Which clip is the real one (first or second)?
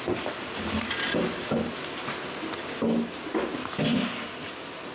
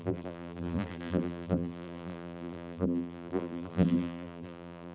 first